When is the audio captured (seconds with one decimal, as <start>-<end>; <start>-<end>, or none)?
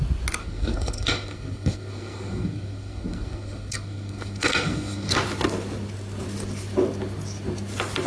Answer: 0.0-0.4; 5.1-8.1